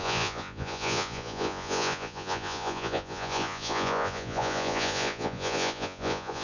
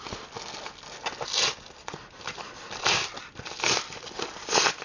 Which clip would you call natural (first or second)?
second